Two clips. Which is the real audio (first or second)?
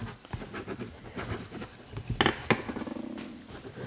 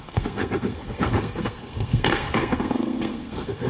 first